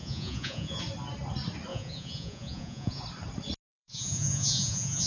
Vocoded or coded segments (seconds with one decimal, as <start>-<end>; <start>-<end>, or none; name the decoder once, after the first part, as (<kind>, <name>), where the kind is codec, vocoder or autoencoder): 0.0-0.8 (vocoder, Vocos); 1.7-3.0; 3.7-5.1